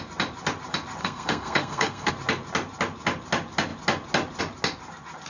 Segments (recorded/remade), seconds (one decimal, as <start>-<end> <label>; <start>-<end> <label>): 0.0-1.0 recorded; 1.0-2.1 remade; 2.1-5.3 recorded

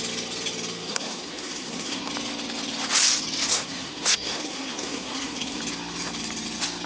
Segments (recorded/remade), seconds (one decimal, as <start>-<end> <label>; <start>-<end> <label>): 0.0-0.9 recorded; 0.9-2.1 remade; 2.1-3.5 recorded; 3.5-5.6 remade; 5.6-6.9 recorded

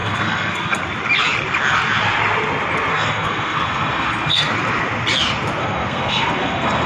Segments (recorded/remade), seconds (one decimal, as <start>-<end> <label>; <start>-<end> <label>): 0.0-0.8 remade; 0.8-2.9 recorded; 2.9-4.5 remade; 4.5-5.6 recorded; 5.6-6.9 remade

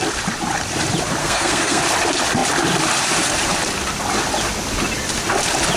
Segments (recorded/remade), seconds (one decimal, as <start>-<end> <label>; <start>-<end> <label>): 0.0-1.2 recorded; 1.2-1.8 remade; 1.8-5.8 recorded

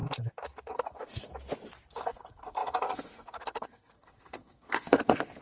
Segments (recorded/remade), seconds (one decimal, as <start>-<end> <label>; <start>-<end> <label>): 0.0-0.7 recorded; 0.7-1.3 remade; 1.3-1.9 recorded; 1.9-5.4 remade

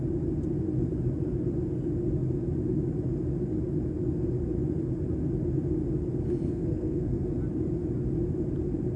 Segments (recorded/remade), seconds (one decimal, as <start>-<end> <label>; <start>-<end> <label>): 0.0-6.5 recorded; 6.5-7.3 remade; 7.3-9.0 recorded

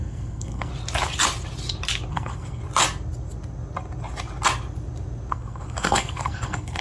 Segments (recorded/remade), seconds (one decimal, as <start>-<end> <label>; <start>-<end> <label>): 0.0-0.7 remade; 0.7-2.1 recorded; 2.1-2.6 remade; 2.6-5.3 recorded; 5.3-6.8 remade